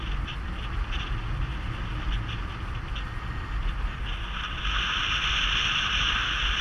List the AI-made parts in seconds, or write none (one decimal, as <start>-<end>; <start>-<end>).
none